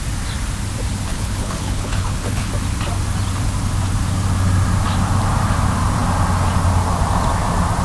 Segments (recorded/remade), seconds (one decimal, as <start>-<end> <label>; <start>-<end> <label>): 0.0-1.1 recorded; 1.1-2.5 remade; 2.5-7.8 recorded